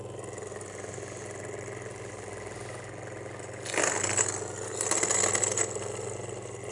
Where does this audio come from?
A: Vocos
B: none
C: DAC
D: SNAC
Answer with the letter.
B